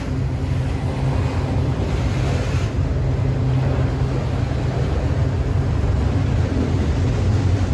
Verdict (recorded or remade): recorded